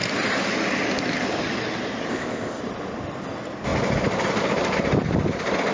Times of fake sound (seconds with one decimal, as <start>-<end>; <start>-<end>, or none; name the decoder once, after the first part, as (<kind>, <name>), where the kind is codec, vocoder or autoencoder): 2.1-2.6 (codec, ZipCodec)